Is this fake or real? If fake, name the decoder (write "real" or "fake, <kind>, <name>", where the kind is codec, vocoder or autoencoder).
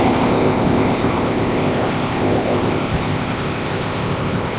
fake, codec, ZipCodec